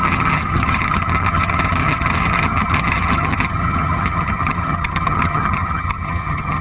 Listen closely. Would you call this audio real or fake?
fake